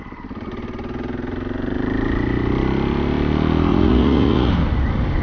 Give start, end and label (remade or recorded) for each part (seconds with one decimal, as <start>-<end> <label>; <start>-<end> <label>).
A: 0.0-3.7 recorded; 3.7-4.5 remade; 4.5-5.2 recorded